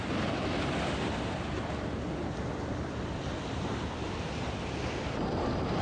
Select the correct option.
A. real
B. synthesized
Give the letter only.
A